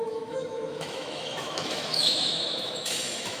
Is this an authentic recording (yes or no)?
no